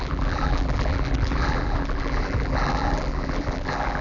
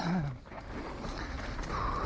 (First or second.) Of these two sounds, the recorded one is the second